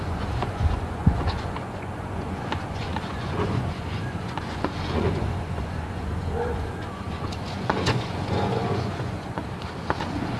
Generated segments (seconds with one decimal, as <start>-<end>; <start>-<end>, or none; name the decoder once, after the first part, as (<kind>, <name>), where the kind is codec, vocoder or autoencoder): 0.0-9.4 (vocoder, Vocos); 10.0-10.4